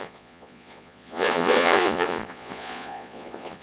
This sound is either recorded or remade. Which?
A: remade